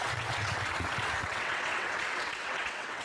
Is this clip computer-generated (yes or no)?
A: yes